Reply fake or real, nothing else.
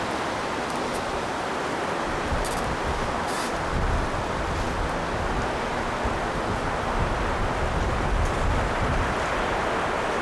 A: real